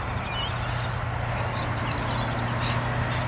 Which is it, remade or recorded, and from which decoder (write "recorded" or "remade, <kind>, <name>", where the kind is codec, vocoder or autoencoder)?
recorded